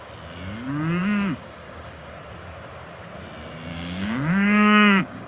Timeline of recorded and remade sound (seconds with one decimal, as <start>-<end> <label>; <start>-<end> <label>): 0.0-1.0 recorded; 1.0-2.1 remade; 2.1-3.7 recorded; 3.7-5.3 remade